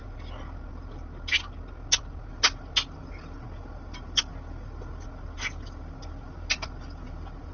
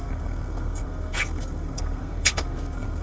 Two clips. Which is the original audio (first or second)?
first